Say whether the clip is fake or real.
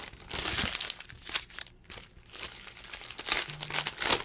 real